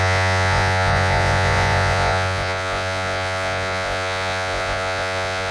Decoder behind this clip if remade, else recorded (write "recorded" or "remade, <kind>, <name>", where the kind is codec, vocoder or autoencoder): remade, vocoder, Vocos